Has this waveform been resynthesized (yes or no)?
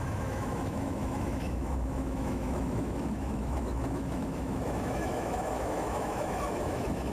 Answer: yes